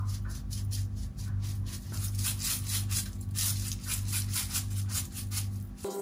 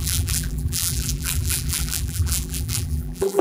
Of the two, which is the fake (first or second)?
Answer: second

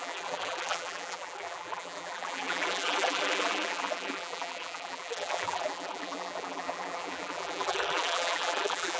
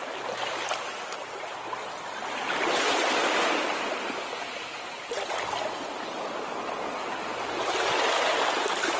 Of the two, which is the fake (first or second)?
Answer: first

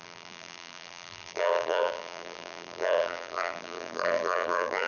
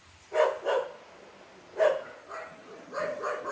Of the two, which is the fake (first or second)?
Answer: first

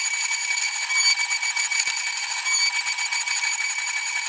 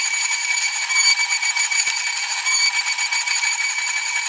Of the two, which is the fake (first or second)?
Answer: second